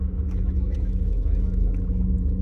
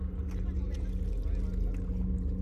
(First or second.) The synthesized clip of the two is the first